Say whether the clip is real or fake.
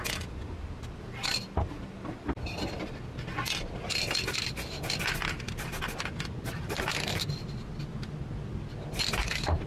real